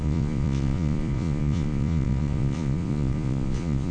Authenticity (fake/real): fake